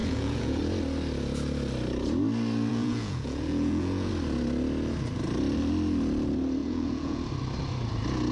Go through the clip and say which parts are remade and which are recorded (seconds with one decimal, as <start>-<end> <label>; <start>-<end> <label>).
0.0-0.6 remade; 0.6-2.7 recorded; 2.7-4.1 remade; 4.1-6.6 recorded; 6.6-7.2 remade; 7.2-8.3 recorded